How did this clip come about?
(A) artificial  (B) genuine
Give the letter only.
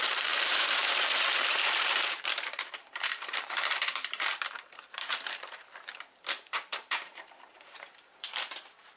A